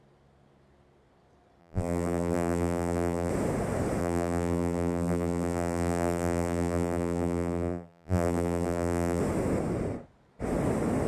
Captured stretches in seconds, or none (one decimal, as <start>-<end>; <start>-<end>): 0.0-1.6; 3.3-4.0; 9.2-11.1